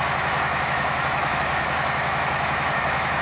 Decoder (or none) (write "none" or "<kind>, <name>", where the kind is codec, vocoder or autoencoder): autoencoder, DAC-VAE